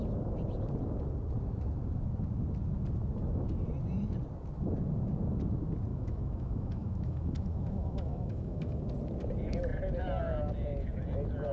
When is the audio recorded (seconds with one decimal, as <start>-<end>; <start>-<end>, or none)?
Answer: 0.0-5.9; 8.8-11.5